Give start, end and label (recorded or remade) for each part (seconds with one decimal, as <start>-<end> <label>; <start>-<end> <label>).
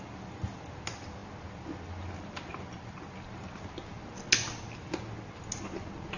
0.0-6.2 recorded